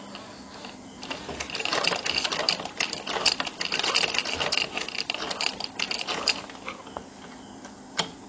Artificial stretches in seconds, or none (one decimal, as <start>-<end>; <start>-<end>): none